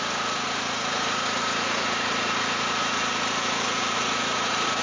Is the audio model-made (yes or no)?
yes